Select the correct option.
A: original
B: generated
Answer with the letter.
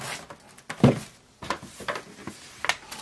A